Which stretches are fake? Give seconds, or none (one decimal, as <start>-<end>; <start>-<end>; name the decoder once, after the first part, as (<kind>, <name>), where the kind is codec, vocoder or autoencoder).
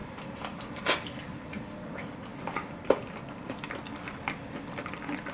none